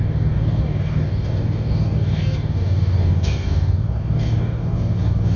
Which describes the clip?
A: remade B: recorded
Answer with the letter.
A